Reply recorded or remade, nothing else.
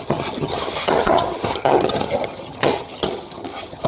remade